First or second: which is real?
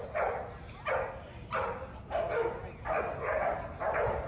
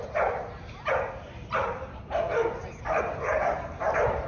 first